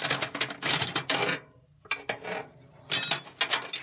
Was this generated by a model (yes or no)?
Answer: no